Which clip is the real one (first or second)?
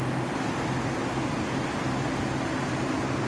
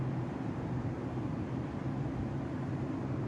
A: first